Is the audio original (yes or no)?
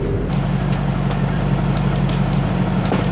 yes